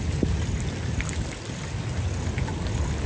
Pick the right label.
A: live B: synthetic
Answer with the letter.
A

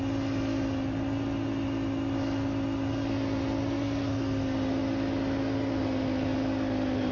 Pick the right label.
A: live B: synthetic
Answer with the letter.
A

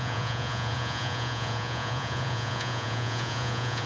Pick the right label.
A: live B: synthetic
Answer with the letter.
B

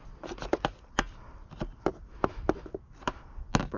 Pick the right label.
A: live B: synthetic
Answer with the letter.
A